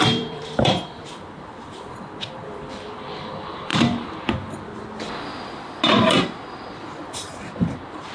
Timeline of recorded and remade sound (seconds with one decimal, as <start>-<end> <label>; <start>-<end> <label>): 0.0-3.7 remade; 3.7-5.9 recorded; 5.9-8.1 remade